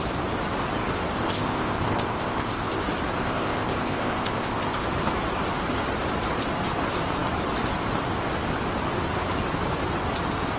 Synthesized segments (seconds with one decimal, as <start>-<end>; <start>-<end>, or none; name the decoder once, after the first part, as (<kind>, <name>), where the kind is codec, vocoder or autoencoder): 1.2-2.8 (codec, ZipCodec); 3.2-4.8